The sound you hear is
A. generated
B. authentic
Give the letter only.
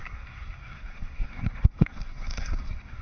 A